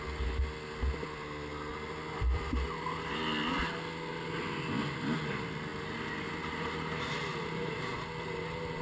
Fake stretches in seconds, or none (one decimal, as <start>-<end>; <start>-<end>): none